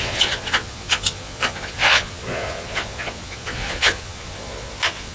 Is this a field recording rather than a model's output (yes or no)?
no